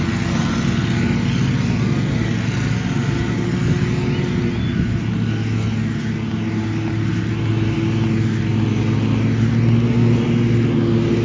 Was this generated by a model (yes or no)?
no